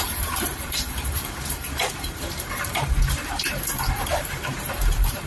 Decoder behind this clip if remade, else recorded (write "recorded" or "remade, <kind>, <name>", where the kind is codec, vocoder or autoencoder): remade, vocoder, BigVGAN v2